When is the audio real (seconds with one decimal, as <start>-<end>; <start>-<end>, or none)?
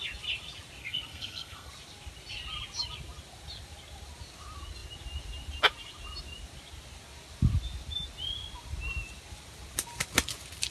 0.0-0.8; 1.7-10.7